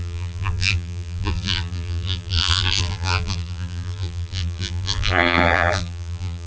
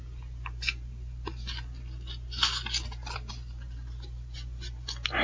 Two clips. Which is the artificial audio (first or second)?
first